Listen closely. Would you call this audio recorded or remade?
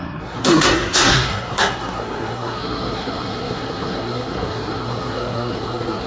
remade